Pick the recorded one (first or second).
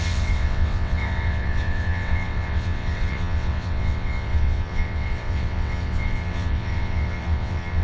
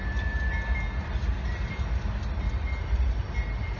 second